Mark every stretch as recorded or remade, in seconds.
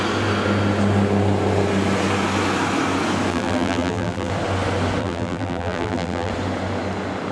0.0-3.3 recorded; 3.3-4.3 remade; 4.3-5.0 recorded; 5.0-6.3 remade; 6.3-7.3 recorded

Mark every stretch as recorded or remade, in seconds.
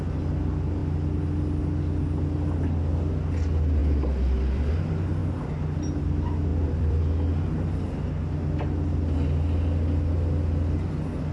0.0-6.5 recorded; 6.5-7.0 remade; 7.0-11.3 recorded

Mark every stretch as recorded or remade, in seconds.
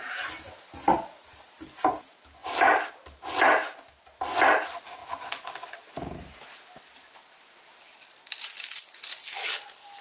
0.0-10.0 recorded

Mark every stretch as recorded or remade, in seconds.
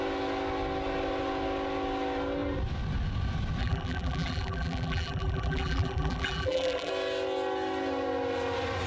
0.0-3.6 recorded; 3.6-6.9 remade; 6.9-8.9 recorded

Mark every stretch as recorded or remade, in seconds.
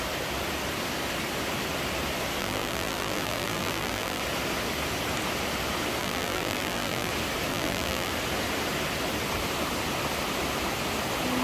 0.0-2.4 recorded; 2.4-4.2 remade; 4.2-6.0 recorded; 6.0-7.1 remade; 7.1-7.5 recorded; 7.5-8.1 remade; 8.1-11.4 recorded